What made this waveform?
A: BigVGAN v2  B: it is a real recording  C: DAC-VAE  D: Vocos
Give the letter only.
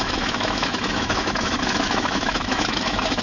C